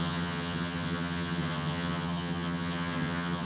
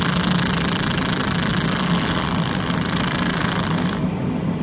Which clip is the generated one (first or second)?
first